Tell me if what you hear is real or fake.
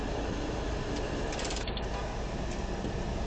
real